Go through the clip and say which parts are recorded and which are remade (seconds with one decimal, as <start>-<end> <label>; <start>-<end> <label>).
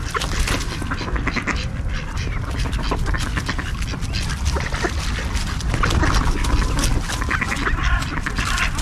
0.0-8.8 recorded